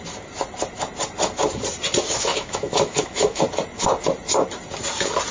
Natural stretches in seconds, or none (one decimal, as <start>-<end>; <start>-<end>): 0.0-2.3; 3.4-5.3